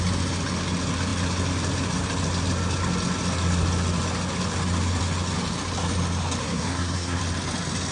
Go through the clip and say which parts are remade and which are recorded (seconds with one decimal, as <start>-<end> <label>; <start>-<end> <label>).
0.0-6.4 recorded; 6.4-7.2 remade; 7.2-7.9 recorded